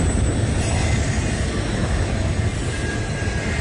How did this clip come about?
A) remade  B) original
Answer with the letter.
B